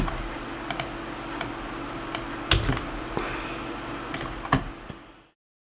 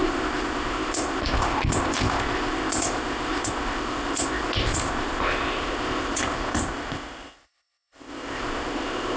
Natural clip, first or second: first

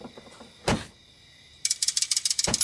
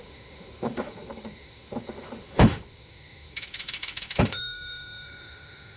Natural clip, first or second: first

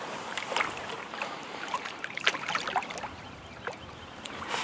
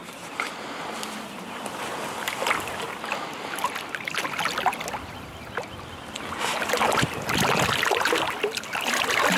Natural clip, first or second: second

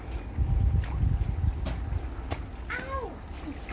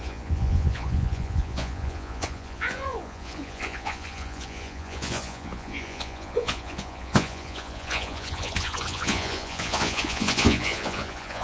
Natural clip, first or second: first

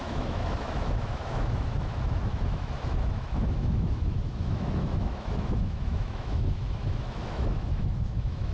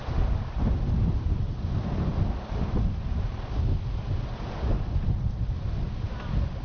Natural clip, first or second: second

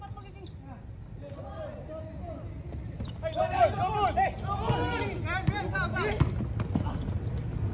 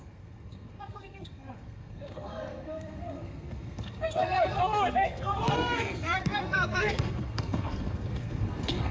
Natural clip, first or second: first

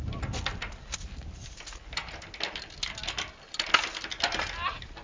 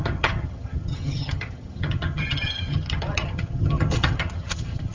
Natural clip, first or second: first